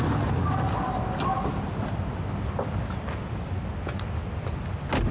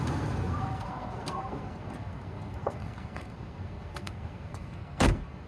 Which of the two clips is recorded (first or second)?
first